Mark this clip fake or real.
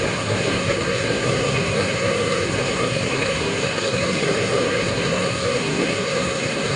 fake